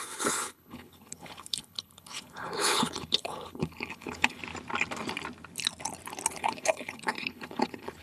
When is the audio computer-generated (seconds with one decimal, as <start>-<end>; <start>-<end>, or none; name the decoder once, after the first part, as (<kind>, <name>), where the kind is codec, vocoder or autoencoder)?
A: 0.0-4.4 (codec, HILCodec); 6.3-8.0